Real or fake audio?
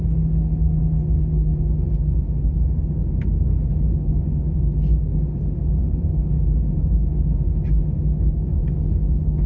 real